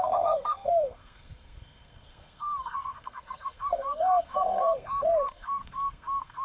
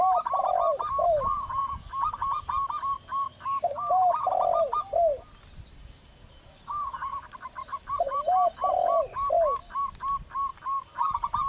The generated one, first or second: first